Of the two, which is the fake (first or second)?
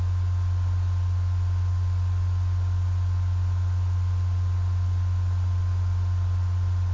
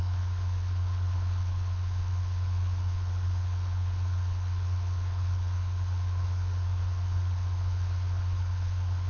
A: second